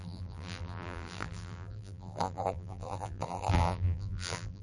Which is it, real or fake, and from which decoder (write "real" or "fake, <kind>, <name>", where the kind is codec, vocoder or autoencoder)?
fake, vocoder, BigVGAN v2